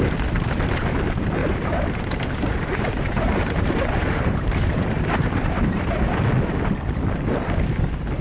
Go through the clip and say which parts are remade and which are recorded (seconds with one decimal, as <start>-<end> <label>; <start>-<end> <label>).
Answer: 0.0-1.4 recorded; 1.4-6.0 remade; 6.0-8.2 recorded